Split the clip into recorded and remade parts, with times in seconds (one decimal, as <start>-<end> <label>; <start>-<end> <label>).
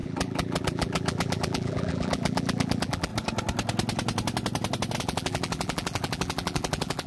0.0-3.1 remade; 3.1-5.0 recorded; 5.0-7.1 remade